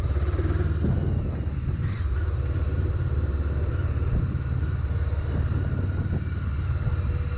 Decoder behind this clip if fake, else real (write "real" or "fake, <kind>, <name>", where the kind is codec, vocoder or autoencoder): real